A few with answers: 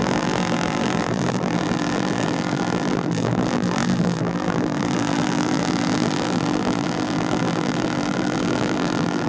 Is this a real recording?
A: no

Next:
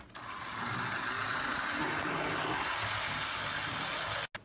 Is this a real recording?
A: yes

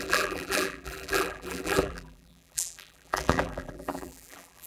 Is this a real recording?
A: no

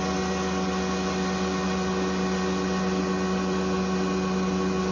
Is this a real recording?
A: yes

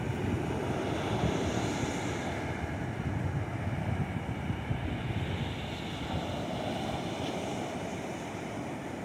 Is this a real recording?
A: yes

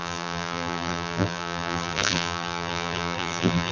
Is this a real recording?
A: no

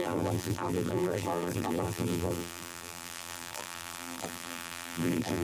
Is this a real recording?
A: no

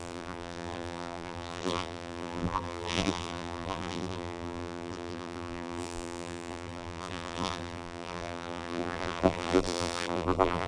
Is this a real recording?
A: no